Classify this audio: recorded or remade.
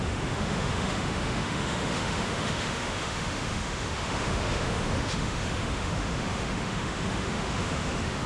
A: remade